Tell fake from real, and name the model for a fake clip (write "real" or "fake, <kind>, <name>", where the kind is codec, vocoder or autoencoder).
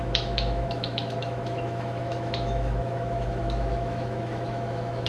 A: fake, autoencoder, DAC-VAE